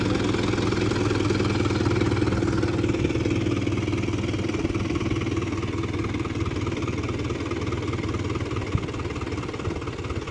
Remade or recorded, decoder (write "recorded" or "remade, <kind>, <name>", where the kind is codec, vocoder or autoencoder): recorded